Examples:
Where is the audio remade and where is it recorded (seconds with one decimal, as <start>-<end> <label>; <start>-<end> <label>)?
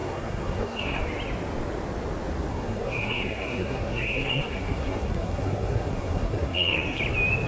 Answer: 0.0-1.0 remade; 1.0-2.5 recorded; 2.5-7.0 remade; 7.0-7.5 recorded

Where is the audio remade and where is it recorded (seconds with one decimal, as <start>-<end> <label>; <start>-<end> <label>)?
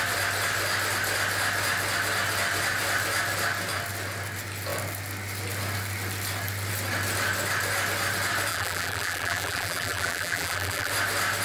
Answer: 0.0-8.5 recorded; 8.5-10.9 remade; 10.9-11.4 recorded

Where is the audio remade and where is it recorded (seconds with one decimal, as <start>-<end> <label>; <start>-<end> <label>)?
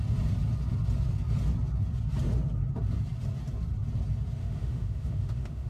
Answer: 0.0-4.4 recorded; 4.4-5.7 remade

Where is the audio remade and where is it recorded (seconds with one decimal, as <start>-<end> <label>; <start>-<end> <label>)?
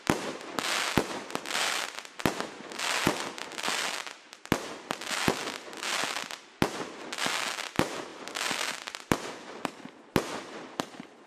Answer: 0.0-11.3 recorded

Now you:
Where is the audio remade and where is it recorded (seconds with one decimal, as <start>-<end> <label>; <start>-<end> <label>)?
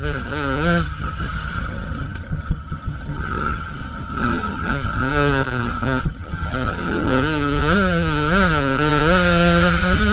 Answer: 0.0-10.1 remade